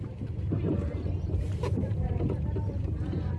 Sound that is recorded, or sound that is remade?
remade